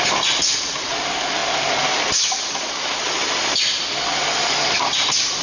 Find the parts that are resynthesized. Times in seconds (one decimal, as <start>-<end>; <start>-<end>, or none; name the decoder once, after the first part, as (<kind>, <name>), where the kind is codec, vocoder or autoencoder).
none